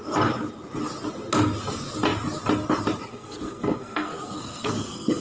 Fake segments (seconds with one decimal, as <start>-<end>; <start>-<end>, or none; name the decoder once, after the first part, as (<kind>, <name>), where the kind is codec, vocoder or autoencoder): 3.1-5.2 (codec, SNAC)